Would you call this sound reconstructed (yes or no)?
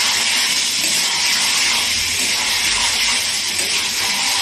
no